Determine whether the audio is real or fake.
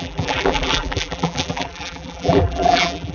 fake